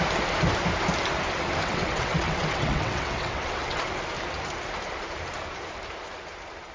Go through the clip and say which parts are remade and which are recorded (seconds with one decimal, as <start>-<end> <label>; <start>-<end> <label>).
0.0-1.6 recorded; 1.6-3.8 remade; 3.8-6.7 recorded